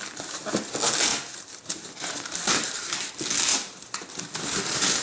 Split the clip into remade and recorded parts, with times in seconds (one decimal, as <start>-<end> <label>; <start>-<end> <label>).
0.0-1.1 recorded; 1.1-3.1 remade; 3.1-3.5 recorded; 3.5-4.1 remade; 4.1-5.0 recorded